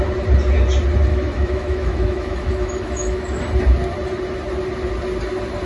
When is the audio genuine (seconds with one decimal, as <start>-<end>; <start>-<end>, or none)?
0.0-1.1; 3.4-5.7

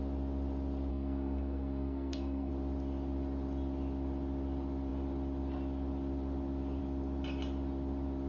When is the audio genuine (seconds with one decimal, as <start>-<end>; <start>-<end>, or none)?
0.0-0.9; 2.5-8.3

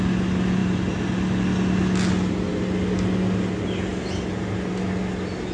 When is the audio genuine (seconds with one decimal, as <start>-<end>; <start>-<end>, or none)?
0.0-5.5

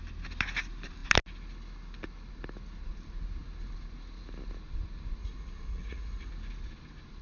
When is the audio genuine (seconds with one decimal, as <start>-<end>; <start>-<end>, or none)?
0.0-5.2; 6.3-7.2

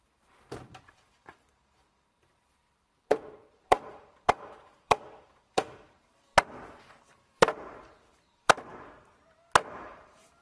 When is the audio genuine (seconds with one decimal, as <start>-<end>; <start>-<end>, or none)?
6.3-6.8; 8.7-9.8